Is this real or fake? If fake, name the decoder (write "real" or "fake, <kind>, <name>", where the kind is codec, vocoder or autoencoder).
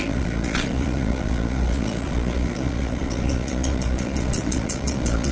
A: fake, vocoder, Vocos